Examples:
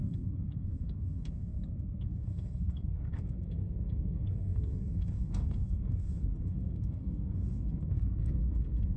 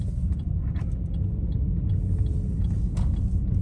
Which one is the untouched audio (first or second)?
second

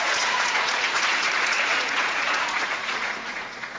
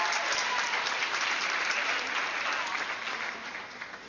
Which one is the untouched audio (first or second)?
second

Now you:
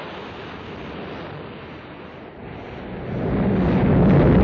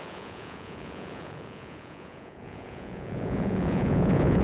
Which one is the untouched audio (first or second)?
first